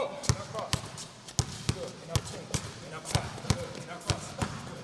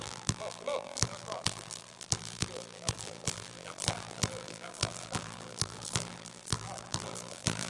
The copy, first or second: second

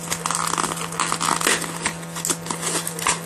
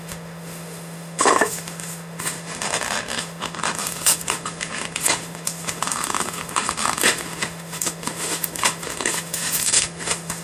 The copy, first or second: second